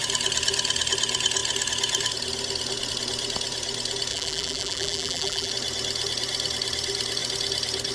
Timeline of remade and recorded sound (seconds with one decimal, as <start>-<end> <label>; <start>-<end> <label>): 0.0-4.1 recorded; 4.1-5.5 remade; 5.5-7.9 recorded